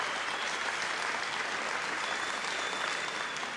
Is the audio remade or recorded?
recorded